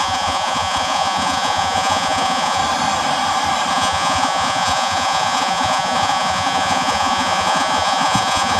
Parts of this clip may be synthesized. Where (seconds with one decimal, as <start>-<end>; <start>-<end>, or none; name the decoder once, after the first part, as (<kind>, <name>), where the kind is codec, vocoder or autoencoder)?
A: 0.0-2.6 (vocoder, Vocos); 3.7-8.6